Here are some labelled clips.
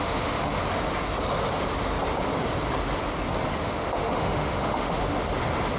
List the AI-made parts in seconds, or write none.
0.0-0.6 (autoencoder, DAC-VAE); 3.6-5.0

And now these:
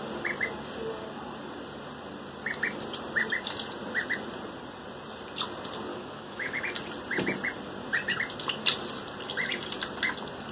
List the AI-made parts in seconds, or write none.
5.9-6.6 (autoencoder, DAC-VAE)

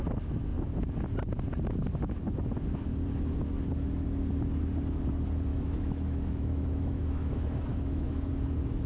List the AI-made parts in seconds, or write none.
5.5-8.3 (autoencoder, DAC-VAE)

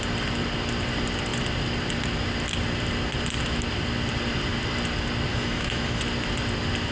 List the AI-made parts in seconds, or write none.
5.3-6.0 (autoencoder, DAC-VAE)

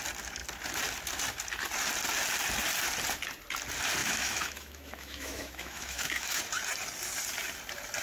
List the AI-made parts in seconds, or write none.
4.0-6.4 (autoencoder, DAC-VAE)